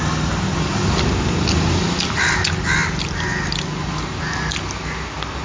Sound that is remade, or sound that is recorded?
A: recorded